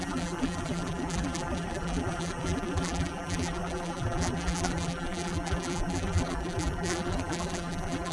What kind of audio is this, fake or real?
fake